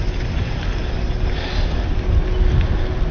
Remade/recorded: recorded